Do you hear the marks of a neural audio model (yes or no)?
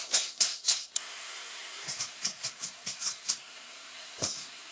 yes